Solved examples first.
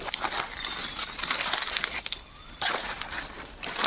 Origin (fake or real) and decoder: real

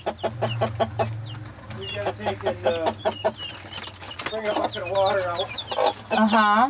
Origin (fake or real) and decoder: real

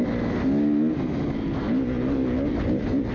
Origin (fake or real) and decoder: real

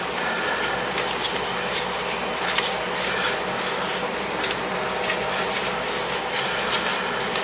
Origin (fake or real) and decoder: real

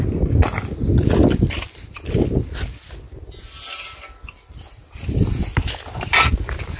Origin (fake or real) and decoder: real